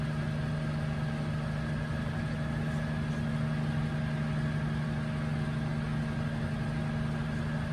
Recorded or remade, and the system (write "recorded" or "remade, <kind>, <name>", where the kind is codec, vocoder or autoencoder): recorded